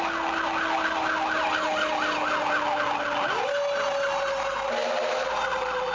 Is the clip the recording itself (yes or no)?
yes